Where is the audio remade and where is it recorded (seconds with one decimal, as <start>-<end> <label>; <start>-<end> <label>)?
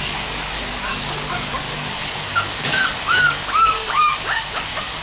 0.0-5.0 remade